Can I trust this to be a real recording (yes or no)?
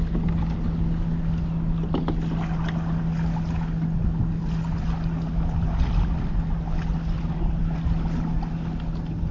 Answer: yes